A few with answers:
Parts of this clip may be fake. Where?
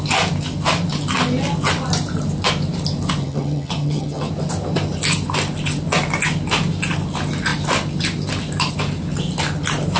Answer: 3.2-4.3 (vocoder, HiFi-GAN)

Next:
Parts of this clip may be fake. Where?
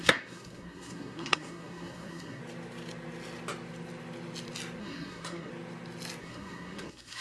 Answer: 0.0-2.4 (codec, SNAC); 4.8-5.5; 6.2-7.2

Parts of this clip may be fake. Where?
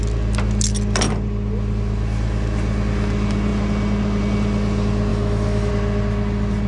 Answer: 5.1-5.7 (autoencoder, DAC-VAE)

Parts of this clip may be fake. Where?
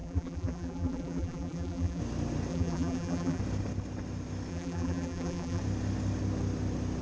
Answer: 0.0-2.0 (vocoder, BigVGAN v2); 2.5-3.4; 4.5-5.6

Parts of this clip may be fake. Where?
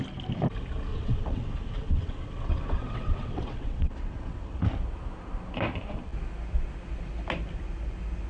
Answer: 0.9-4.6 (vocoder, WaveNeXt)